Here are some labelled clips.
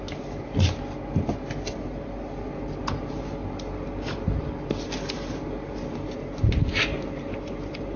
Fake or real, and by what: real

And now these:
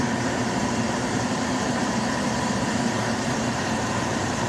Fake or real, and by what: fake, vocoder, BigVGAN v2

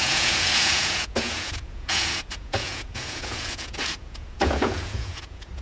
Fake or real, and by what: fake, vocoder, Vocos